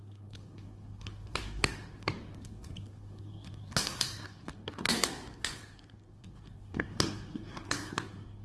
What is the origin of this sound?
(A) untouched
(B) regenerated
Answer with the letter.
B